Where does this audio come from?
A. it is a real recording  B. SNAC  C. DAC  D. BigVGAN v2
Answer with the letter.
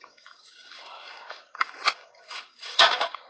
C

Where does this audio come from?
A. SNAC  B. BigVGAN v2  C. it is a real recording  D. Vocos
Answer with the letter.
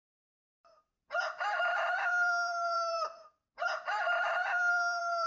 B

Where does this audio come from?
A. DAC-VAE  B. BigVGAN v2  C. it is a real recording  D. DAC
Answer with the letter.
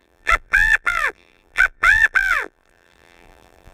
B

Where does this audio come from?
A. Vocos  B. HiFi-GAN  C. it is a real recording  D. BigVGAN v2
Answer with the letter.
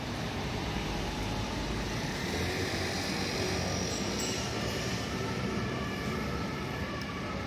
D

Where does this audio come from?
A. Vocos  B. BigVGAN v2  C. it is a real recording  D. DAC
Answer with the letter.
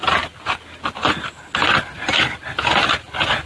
C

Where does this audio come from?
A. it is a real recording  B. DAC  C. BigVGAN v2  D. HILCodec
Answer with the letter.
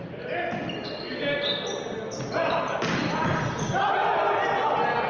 A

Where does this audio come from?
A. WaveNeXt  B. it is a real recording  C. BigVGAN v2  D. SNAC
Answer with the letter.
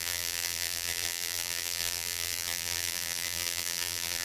C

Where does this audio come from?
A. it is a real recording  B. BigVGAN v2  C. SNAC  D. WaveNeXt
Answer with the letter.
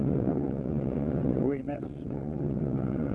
D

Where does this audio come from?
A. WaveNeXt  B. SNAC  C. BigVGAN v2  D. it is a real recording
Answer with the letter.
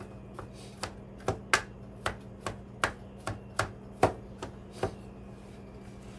D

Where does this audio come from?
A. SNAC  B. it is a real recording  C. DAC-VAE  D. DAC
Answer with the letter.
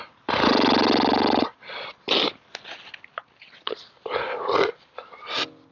B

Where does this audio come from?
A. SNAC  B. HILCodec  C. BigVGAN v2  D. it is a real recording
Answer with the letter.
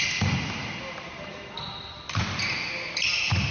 D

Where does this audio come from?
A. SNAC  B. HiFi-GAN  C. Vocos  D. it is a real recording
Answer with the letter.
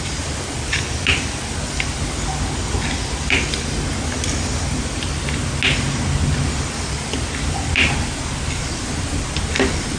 D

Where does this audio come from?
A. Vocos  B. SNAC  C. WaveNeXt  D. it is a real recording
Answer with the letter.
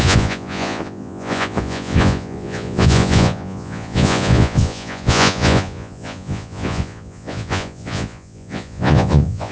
A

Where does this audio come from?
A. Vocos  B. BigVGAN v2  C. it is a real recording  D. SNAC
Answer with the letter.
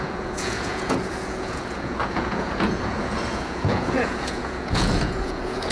A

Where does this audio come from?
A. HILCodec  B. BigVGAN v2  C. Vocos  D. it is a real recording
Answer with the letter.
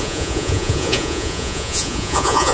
C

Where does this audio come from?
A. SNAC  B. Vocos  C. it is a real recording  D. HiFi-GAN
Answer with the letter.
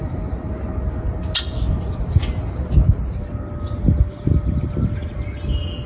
C